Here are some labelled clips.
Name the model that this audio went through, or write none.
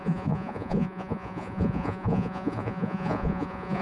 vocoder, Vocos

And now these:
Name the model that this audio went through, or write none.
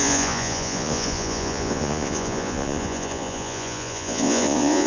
vocoder, Vocos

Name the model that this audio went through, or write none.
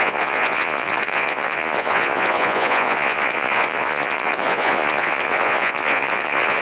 vocoder, Vocos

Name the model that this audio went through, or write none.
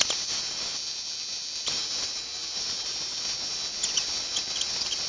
none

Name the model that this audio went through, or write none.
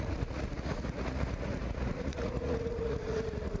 vocoder, Vocos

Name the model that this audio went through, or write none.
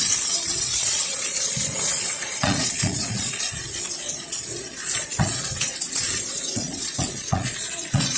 vocoder, Vocos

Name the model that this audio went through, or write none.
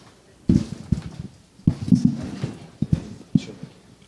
none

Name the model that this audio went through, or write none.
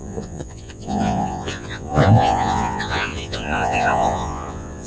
vocoder, Vocos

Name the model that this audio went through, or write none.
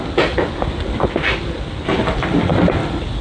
none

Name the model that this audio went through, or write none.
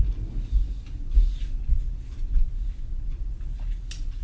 none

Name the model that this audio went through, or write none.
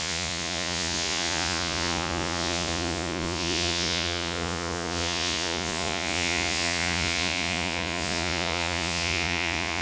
vocoder, Vocos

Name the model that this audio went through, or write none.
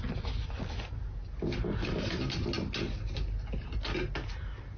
none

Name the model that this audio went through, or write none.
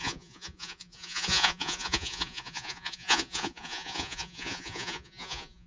vocoder, Vocos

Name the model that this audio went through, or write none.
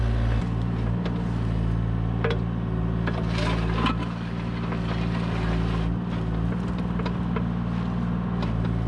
none